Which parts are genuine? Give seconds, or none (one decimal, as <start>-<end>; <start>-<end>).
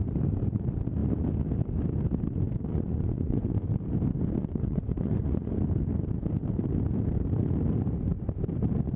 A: 0.0-2.7; 3.6-4.4; 5.5-9.0